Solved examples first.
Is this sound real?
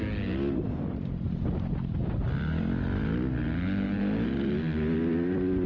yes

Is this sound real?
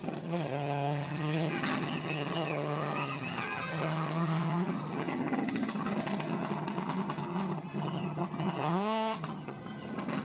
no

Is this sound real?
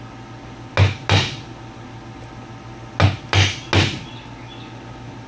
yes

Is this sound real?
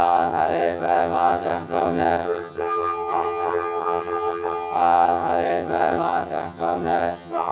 no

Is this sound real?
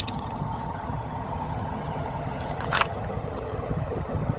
no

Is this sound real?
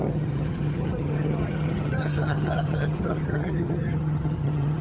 no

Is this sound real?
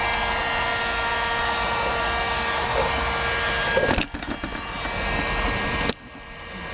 yes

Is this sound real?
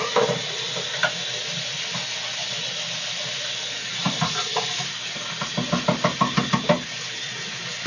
yes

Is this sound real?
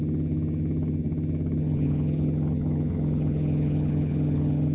no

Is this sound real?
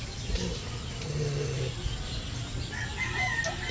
yes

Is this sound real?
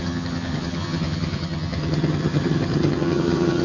no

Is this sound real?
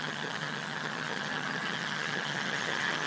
no